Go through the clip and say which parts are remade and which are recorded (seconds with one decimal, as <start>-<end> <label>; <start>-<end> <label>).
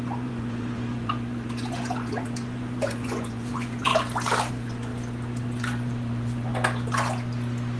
0.0-3.9 remade; 3.9-4.5 recorded; 4.5-4.9 remade; 4.9-5.4 recorded; 5.4-6.5 remade; 6.5-7.8 recorded